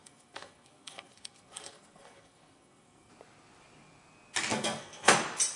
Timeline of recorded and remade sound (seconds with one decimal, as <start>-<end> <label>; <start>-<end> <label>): 0.0-3.1 remade; 3.1-4.5 recorded; 4.5-5.1 remade; 5.1-5.6 recorded